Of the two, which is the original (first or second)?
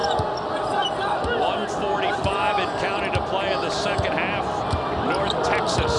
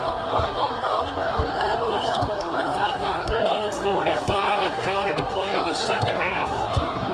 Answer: first